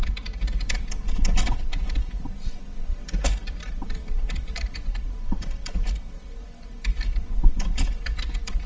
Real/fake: fake